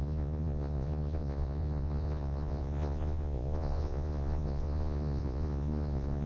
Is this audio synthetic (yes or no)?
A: yes